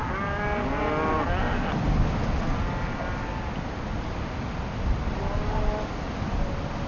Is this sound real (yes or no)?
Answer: yes